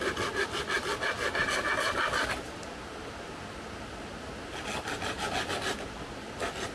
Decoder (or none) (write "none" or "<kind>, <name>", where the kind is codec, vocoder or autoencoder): none